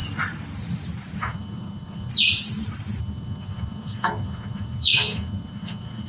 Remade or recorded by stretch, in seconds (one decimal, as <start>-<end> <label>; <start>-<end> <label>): 0.0-1.2 recorded; 1.2-2.1 remade; 2.1-3.0 recorded; 3.0-6.1 remade